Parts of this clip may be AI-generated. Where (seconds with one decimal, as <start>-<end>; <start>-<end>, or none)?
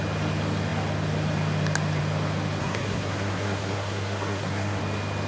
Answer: 2.6-4.8